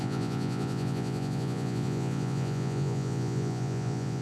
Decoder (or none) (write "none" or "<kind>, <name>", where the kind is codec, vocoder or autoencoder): vocoder, Vocos